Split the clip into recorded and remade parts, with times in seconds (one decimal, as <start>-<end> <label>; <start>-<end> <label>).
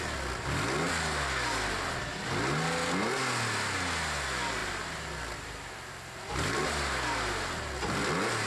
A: 0.0-4.6 recorded; 4.6-5.7 remade; 5.7-8.5 recorded